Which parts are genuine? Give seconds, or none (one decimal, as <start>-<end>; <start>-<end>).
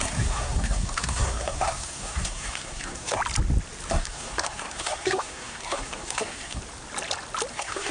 3.2-3.9; 6.6-7.5